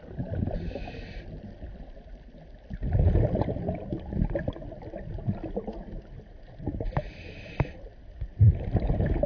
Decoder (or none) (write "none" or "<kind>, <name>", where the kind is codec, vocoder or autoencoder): none